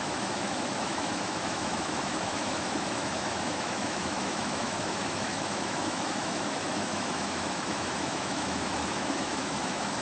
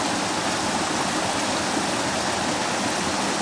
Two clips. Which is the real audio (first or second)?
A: second